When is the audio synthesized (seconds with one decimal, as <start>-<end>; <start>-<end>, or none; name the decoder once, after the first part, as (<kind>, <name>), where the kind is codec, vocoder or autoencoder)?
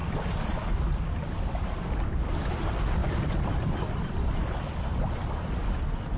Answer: 3.0-3.7 (vocoder, BigVGAN v2)